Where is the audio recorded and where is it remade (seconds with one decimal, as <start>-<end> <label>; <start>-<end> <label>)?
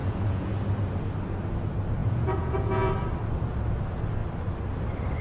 0.0-0.5 remade; 0.5-2.0 recorded; 2.0-2.9 remade; 2.9-5.2 recorded